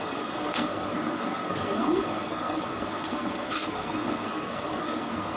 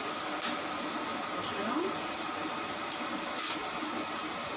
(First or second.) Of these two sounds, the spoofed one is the first